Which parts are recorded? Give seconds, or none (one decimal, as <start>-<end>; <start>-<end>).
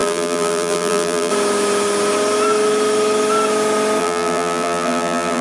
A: 1.3-4.0